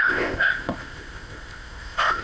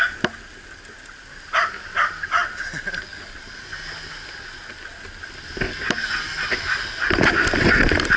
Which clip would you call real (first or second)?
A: second